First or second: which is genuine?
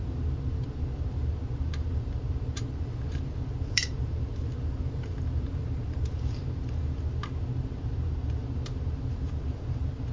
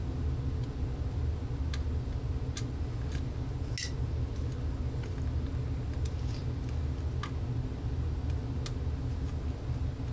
second